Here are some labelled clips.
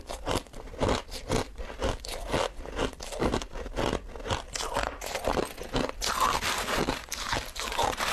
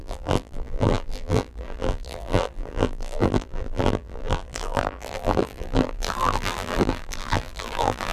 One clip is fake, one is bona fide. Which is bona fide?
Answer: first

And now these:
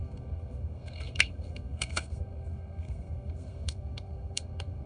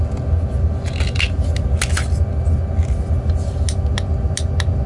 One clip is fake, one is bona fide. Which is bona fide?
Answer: second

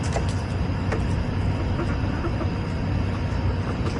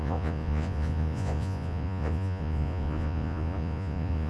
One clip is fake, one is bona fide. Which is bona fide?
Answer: first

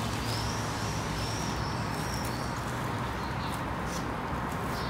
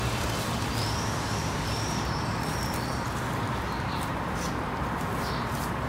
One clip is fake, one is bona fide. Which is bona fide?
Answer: first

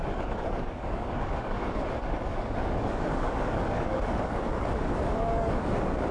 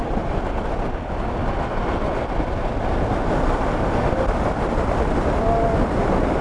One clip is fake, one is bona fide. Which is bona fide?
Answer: second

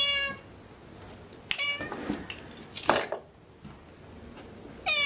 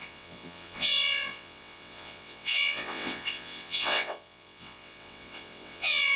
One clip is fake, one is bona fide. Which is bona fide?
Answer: first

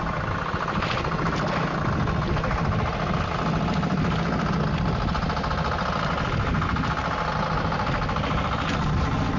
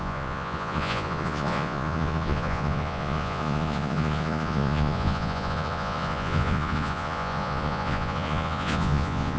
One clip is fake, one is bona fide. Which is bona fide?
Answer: first